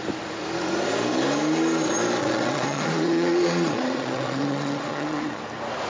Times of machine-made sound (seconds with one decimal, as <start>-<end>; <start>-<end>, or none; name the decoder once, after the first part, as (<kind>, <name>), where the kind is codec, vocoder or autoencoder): 2.2-5.4 (vocoder, Vocos)

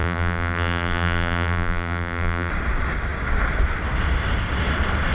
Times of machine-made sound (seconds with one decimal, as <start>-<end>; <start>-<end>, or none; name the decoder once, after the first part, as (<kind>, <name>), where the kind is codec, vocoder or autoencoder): 0.0-2.5 (vocoder, BigVGAN v2)

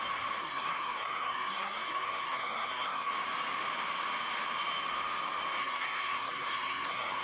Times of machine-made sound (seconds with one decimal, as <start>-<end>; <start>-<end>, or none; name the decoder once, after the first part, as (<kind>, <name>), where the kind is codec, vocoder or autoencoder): 0.4-3.1 (codec, SNAC); 5.6-7.2

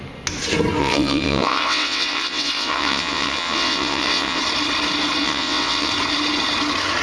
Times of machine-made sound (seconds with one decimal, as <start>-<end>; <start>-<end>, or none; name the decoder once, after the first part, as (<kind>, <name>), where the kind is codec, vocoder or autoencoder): 0.8-4.4 (vocoder, WaveNeXt); 5.2-5.9

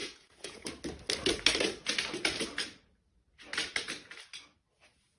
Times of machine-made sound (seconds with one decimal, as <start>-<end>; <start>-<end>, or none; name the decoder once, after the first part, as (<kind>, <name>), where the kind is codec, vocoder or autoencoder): 0.0-0.7 (vocoder, Vocos)

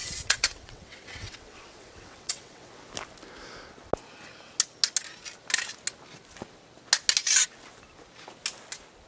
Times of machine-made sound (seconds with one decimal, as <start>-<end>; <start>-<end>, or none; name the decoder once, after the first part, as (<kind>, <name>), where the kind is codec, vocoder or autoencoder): 0.0-2.7 (vocoder, WaveNeXt)